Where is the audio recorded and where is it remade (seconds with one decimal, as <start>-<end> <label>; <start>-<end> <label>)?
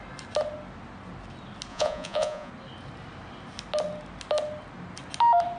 0.0-1.7 recorded; 1.7-2.5 remade; 2.5-5.6 recorded